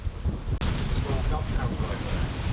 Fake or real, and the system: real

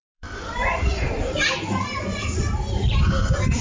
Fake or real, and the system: fake, vocoder, BigVGAN v2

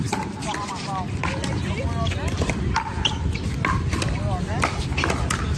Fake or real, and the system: real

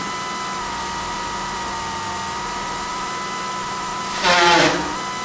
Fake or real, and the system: real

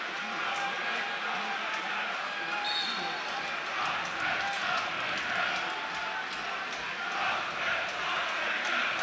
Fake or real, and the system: real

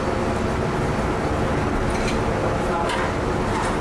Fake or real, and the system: real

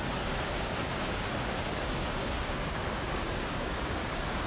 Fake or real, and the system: fake, codec, DAC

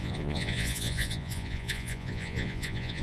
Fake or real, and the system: fake, vocoder, Vocos